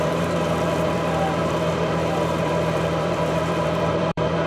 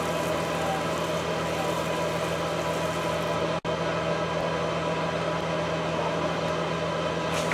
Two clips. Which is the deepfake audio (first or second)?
first